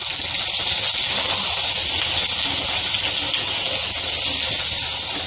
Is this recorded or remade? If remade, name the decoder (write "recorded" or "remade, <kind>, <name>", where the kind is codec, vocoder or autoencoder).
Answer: recorded